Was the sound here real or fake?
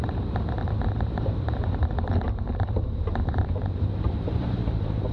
fake